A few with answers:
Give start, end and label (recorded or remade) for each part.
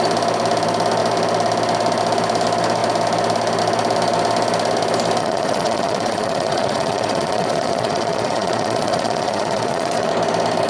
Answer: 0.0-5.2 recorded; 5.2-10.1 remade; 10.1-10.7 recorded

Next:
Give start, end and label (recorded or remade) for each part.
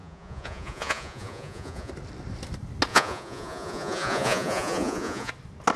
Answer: 0.0-1.9 remade; 1.9-2.9 recorded; 2.9-5.3 remade; 5.3-5.8 recorded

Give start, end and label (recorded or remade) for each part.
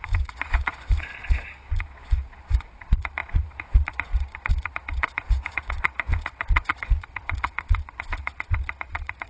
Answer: 0.0-9.3 remade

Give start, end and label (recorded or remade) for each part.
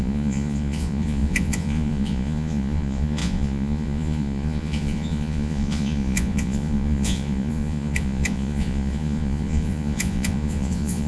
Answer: 0.0-11.1 remade